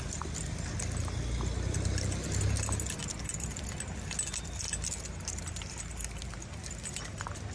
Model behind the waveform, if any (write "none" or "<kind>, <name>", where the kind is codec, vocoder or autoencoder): none